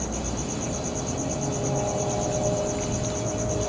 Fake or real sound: real